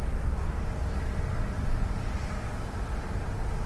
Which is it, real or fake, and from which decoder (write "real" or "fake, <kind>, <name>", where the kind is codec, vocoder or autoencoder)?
real